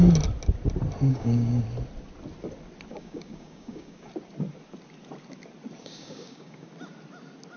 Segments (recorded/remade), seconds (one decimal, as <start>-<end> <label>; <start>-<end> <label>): 0.0-1.1 recorded; 1.1-1.6 remade; 1.6-2.9 recorded; 2.9-4.1 remade; 4.1-5.8 recorded; 5.8-6.7 remade; 6.7-7.6 recorded